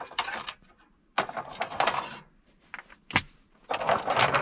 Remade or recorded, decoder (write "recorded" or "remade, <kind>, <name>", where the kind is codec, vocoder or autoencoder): recorded